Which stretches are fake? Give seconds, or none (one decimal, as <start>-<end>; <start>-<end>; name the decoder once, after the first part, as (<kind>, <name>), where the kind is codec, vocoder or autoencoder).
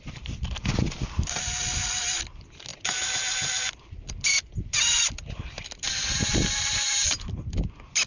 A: none